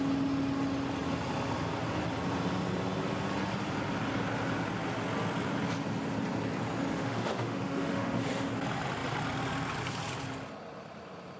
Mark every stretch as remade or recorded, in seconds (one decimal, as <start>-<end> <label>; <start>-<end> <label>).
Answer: 0.0-6.9 recorded; 6.9-8.5 remade; 8.5-11.4 recorded